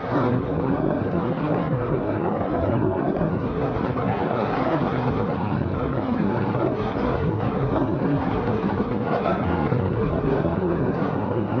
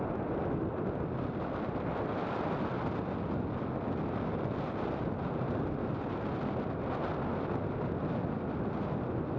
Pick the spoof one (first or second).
first